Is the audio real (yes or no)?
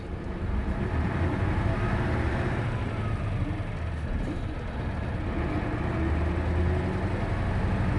yes